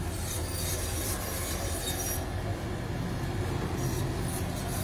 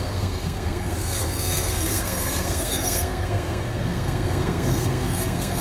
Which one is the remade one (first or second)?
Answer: second